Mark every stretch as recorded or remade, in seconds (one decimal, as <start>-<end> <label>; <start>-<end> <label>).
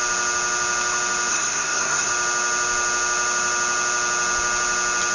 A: 0.0-1.3 recorded; 1.3-2.1 remade; 2.1-5.1 recorded